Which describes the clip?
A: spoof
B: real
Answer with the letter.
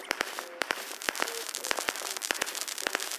A